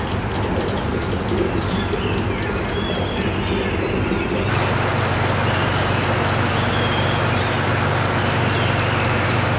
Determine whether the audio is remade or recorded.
recorded